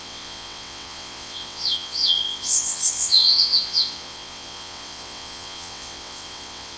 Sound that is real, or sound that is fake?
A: fake